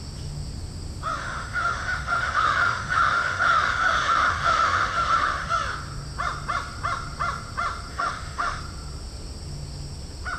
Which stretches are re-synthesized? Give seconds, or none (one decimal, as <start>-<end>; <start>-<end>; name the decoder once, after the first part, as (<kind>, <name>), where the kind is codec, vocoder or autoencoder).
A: 1.2-5.5 (autoencoder, DAC-VAE); 7.9-8.6